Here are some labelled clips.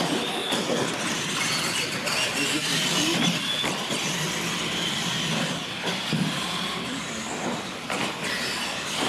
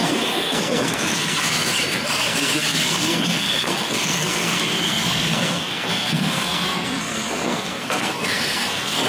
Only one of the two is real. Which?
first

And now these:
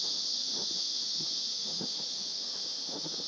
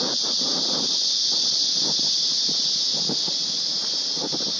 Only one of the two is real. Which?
second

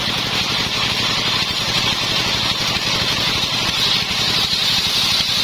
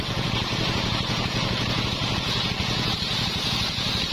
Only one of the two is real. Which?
first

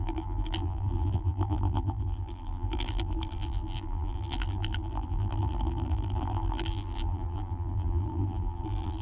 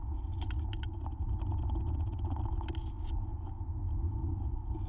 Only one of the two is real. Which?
second